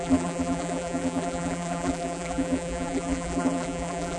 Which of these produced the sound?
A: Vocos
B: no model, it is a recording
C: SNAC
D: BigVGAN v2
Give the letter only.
D